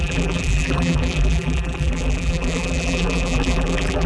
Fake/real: fake